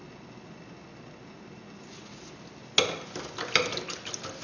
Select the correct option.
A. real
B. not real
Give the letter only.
A